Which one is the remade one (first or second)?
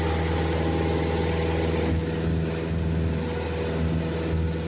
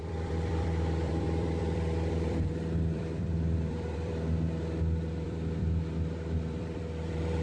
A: second